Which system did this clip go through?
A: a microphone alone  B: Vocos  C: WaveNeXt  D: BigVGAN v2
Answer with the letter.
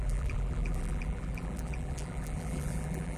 D